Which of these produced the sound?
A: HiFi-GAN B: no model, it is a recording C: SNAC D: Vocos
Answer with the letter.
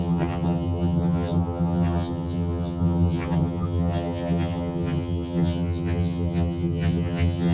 A